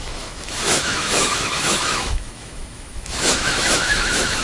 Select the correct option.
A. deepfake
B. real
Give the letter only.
A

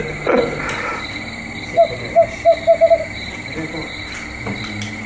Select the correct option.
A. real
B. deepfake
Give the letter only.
A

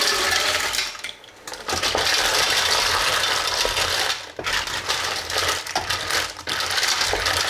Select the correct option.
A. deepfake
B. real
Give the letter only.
B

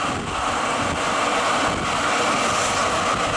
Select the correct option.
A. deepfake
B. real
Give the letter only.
B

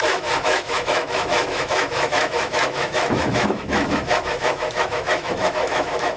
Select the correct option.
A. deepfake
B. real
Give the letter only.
A